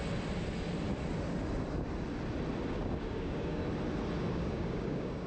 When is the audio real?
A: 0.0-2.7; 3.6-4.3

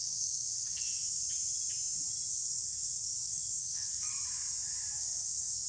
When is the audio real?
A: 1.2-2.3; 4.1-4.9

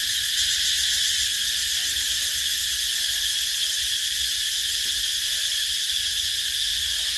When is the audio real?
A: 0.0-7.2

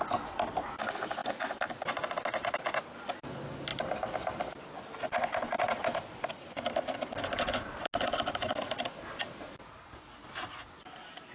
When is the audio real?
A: 0.0-11.3

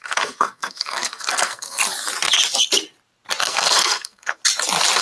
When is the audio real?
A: 1.8-3.4; 4.4-5.0